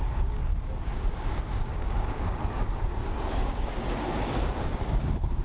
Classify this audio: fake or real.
fake